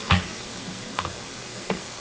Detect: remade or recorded remade